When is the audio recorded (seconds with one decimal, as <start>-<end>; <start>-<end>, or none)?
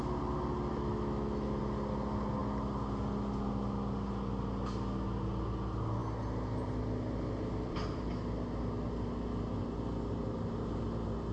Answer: 0.0-0.7; 1.6-11.3